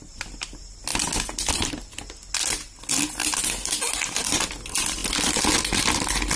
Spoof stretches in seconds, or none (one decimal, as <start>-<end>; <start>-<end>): none